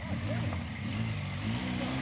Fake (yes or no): no